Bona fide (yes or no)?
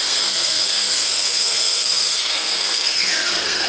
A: no